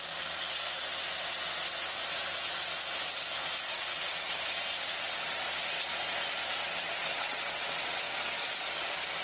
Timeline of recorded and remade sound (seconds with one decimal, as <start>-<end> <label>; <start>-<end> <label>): 0.0-3.7 recorded; 3.7-4.3 remade; 4.3-7.0 recorded; 7.0-8.0 remade; 8.0-9.2 recorded